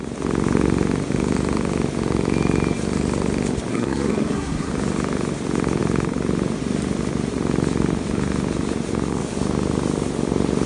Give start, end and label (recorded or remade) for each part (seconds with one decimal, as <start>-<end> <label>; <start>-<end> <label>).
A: 0.0-3.7 recorded; 3.7-4.7 remade; 4.7-10.7 recorded